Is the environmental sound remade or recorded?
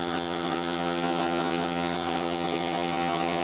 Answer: remade